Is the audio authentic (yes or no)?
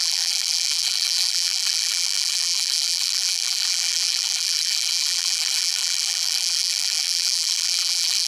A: no